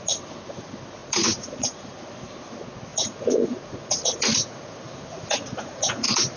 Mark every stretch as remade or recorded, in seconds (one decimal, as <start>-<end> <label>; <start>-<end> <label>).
0.0-1.0 recorded; 1.0-2.1 remade; 2.1-2.9 recorded; 2.9-6.4 remade